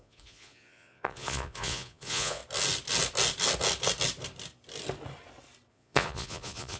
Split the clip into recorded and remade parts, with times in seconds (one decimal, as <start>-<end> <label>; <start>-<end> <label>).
0.0-2.4 remade; 2.4-5.7 recorded; 5.7-6.8 remade